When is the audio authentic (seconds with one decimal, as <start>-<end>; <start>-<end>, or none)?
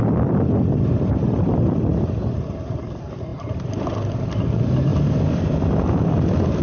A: 1.9-2.5